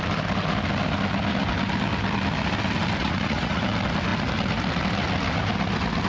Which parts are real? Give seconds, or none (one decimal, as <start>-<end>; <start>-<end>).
0.0-3.0; 3.6-6.1